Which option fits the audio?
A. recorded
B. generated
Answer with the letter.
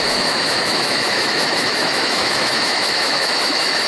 B